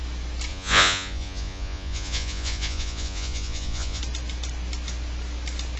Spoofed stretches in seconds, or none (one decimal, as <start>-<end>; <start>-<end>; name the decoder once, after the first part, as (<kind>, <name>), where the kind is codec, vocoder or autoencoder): 0.5-4.0 (vocoder, Vocos)